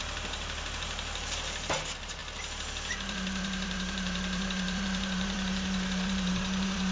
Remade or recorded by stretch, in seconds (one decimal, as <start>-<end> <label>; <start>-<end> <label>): 0.0-2.2 remade; 2.2-2.9 recorded; 2.9-6.9 remade